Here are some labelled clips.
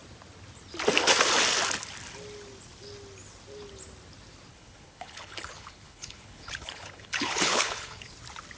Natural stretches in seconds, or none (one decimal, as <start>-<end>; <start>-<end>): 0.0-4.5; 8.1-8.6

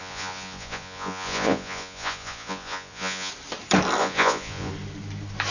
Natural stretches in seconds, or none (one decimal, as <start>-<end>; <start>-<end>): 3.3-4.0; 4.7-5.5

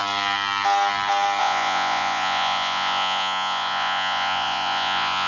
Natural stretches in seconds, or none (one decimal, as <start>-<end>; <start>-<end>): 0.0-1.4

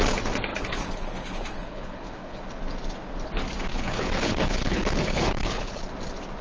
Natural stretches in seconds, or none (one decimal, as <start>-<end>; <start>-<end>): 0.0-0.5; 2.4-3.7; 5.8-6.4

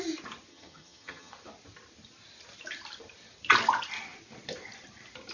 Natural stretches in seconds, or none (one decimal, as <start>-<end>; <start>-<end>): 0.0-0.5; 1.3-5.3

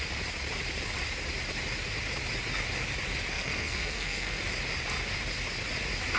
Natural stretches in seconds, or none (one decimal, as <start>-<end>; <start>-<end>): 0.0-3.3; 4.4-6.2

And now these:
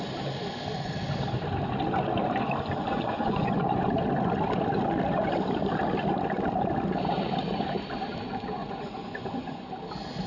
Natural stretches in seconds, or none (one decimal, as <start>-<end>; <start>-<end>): 0.0-2.9; 3.8-8.6; 9.7-10.3

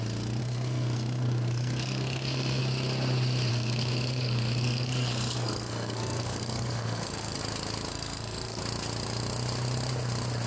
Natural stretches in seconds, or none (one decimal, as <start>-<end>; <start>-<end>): 0.0-0.4; 2.6-3.5; 7.4-7.9; 8.6-10.5